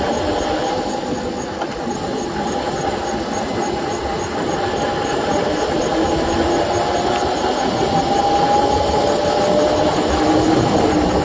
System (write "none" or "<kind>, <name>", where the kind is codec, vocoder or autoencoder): none